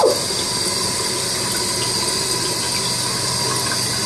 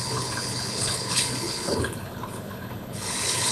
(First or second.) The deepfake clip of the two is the second